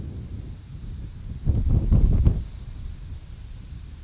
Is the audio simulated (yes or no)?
no